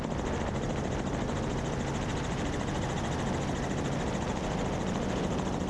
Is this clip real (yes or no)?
yes